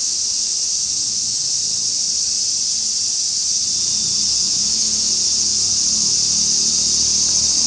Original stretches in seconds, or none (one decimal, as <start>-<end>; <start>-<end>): 1.6-4.3; 5.1-7.7